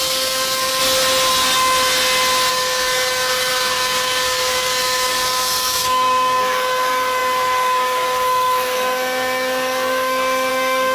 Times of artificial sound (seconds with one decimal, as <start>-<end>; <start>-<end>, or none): 0.0-0.8; 2.5-10.9